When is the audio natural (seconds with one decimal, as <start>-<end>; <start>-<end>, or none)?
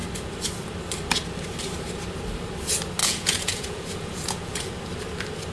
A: 0.0-3.0; 4.7-5.5